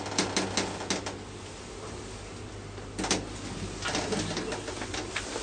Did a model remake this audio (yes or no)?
no